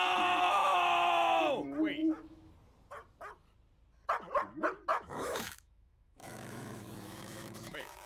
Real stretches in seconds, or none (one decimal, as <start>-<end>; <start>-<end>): 0.0-0.6; 1.4-2.0; 2.5-4.9